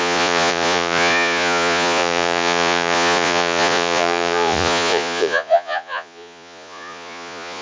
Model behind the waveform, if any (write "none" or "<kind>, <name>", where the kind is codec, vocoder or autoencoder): vocoder, Vocos